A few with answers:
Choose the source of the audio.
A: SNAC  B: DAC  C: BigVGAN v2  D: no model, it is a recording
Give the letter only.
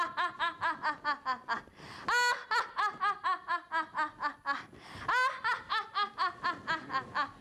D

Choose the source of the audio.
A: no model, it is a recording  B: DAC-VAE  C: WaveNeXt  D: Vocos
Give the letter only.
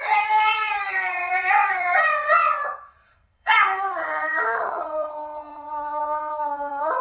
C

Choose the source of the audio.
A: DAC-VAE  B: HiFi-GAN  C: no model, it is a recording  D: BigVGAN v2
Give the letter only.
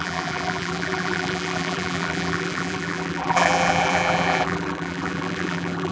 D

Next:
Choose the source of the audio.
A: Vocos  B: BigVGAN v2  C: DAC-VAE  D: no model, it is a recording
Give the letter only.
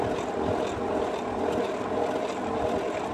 D